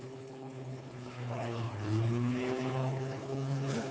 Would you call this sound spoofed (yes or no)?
yes